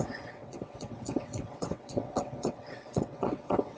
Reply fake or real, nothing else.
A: fake